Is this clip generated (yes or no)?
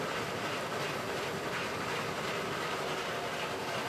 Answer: no